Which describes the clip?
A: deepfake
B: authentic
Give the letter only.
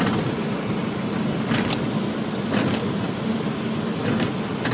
B